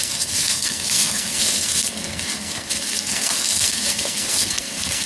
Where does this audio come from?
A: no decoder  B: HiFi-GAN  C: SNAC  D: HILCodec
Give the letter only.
C